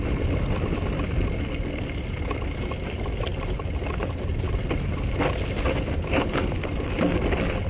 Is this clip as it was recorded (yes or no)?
yes